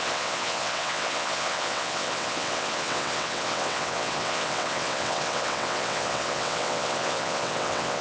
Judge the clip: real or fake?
fake